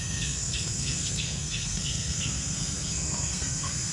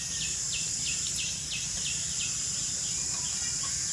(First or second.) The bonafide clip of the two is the second